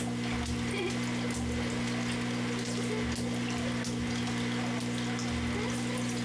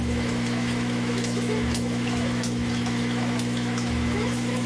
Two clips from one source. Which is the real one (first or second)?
first